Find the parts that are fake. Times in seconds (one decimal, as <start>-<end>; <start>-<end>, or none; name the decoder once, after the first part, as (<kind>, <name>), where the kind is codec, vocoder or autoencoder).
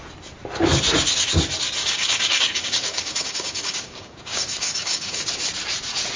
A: 1.8-5.2 (codec, DAC)